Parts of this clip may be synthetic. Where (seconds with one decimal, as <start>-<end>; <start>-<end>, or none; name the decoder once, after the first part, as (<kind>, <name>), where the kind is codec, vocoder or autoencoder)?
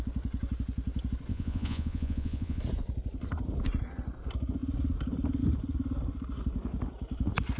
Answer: 1.3-2.6 (vocoder, Vocos)